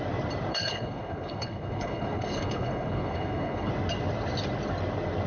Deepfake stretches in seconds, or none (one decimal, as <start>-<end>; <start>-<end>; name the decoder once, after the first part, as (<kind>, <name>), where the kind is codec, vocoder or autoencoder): 0.5-3.7 (codec, HILCodec)